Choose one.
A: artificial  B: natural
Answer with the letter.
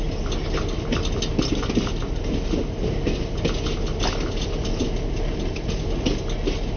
B